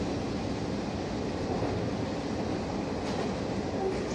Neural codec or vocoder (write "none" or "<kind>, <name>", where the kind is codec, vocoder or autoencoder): none